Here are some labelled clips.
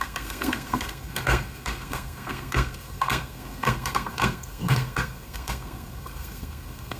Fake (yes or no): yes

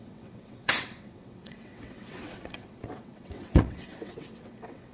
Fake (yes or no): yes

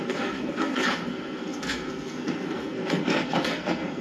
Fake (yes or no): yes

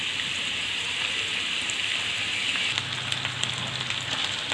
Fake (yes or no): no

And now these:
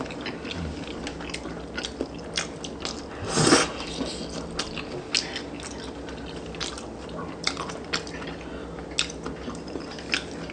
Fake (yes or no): no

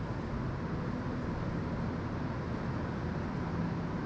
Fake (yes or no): no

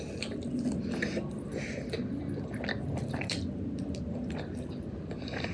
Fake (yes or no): no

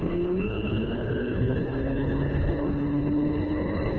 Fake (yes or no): yes